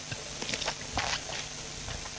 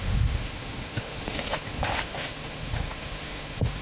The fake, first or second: second